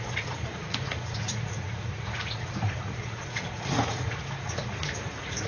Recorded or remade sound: remade